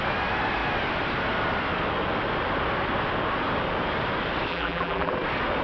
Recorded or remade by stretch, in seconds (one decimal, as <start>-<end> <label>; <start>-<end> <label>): 0.0-4.5 recorded; 4.5-5.1 remade; 5.1-5.6 recorded